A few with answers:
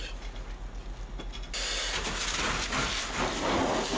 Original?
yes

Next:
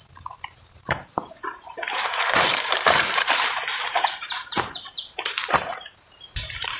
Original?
no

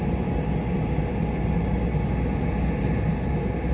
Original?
yes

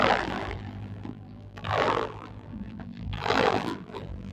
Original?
no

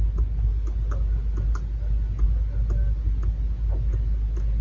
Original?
yes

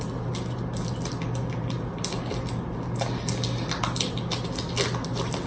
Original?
yes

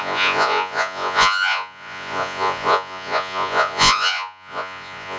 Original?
no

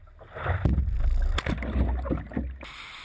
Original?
yes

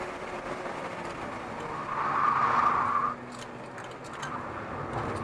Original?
yes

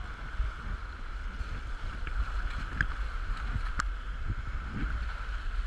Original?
yes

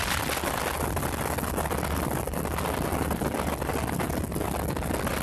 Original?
yes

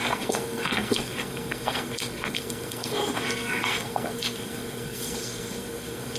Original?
no